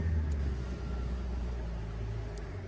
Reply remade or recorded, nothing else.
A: recorded